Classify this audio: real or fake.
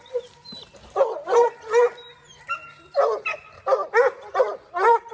real